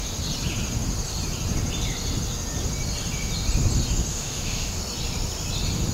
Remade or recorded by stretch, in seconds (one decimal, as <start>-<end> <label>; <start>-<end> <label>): 0.0-4.1 recorded; 4.1-4.8 remade; 4.8-5.9 recorded